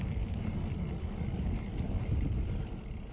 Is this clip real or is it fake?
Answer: real